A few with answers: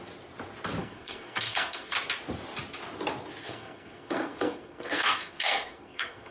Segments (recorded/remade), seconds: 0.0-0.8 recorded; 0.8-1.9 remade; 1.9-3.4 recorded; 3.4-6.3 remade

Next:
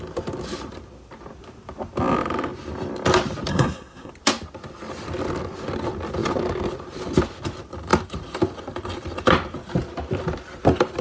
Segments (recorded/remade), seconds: 0.0-3.5 recorded; 3.5-4.1 remade; 4.1-11.0 recorded

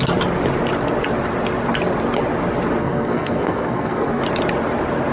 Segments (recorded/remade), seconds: 0.0-2.8 recorded; 2.8-4.2 remade; 4.2-5.1 recorded

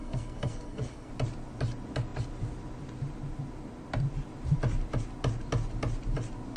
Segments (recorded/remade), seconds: 0.0-1.1 remade; 1.1-6.6 recorded